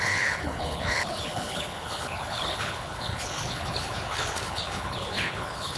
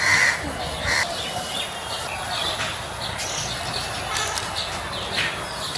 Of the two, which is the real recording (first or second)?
second